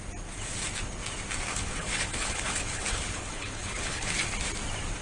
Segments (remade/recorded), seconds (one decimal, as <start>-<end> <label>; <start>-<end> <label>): 0.0-1.5 recorded; 1.5-4.2 remade; 4.2-5.0 recorded

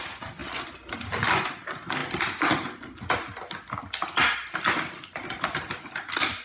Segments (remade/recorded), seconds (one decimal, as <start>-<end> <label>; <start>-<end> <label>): 0.0-6.4 recorded

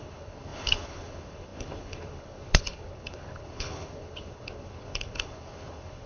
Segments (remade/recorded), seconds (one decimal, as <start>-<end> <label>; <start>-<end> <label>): 0.0-6.1 remade

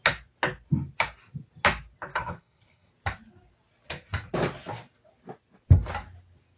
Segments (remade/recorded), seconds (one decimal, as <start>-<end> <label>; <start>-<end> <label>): 0.0-2.1 recorded; 2.1-2.9 remade; 2.9-6.6 recorded

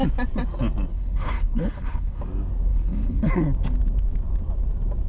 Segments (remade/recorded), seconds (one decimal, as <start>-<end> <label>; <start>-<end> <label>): 0.0-0.9 recorded; 0.9-2.2 remade; 2.2-2.7 recorded; 2.7-3.3 remade; 3.3-5.1 recorded

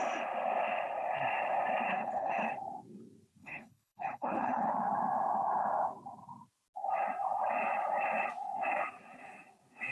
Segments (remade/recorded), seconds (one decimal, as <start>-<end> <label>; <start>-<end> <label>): 0.0-1.9 recorded; 1.9-2.5 remade; 2.5-3.4 recorded; 3.4-4.7 remade; 4.7-9.9 recorded

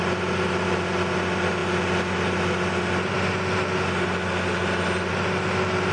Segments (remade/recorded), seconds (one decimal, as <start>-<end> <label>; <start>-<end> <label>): 0.0-5.9 recorded